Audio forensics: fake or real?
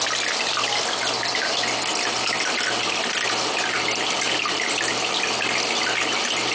real